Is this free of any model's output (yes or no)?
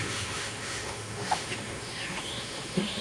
no